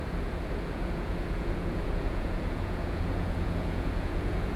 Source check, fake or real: fake